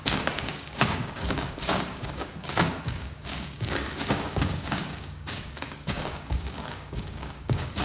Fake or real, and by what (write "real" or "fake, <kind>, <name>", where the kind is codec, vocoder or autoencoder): fake, codec, DAC